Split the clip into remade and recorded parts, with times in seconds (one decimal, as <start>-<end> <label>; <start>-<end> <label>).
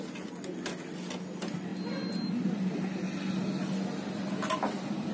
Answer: 0.0-5.1 recorded